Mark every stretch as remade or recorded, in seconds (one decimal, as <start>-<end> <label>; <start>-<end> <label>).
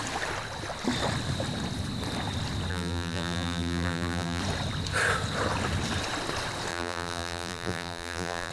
0.0-2.7 recorded; 2.7-4.4 remade; 4.4-6.7 recorded; 6.7-8.5 remade